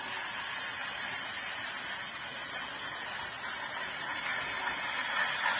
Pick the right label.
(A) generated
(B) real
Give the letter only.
B